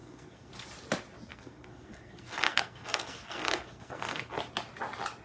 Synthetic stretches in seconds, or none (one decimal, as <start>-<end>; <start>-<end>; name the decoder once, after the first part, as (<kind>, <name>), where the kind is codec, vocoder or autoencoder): 0.0-0.5 (codec, SNAC); 1.3-4.4